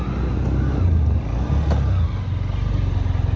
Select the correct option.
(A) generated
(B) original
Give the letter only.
B